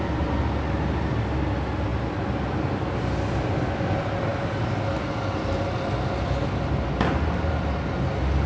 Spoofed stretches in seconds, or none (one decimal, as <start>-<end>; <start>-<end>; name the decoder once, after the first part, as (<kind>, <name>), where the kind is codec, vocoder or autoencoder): none